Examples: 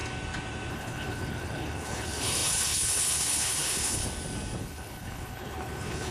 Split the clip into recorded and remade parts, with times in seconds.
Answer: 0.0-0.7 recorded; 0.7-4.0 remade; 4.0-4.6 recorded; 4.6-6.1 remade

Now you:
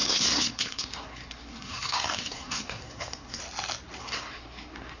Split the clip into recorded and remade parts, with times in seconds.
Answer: 0.0-3.4 remade; 3.4-4.0 recorded; 4.0-5.0 remade

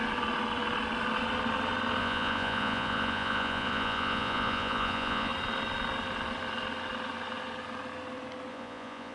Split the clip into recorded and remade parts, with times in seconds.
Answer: 0.0-2.0 recorded; 2.0-5.3 remade; 5.3-8.5 recorded; 8.5-9.1 remade

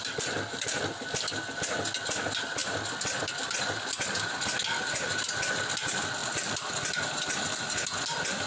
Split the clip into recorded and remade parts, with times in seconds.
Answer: 0.0-6.2 recorded; 6.2-7.1 remade; 7.1-8.5 recorded

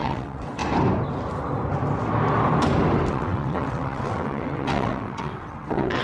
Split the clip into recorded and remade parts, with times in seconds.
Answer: 0.0-0.6 remade; 0.6-3.1 recorded; 3.1-6.0 remade

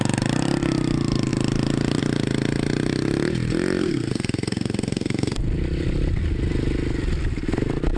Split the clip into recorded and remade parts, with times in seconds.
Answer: 0.0-3.8 recorded; 3.8-5.4 remade; 5.4-8.0 recorded

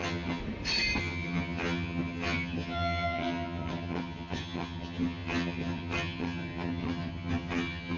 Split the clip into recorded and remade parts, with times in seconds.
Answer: 0.0-0.4 remade; 0.4-1.0 recorded; 1.0-8.0 remade